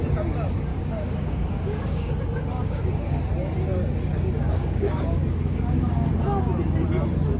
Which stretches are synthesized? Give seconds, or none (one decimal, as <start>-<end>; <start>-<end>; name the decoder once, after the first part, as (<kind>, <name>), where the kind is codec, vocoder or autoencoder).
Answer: 0.7-2.1 (codec, DAC); 2.6-3.2; 4.5-6.2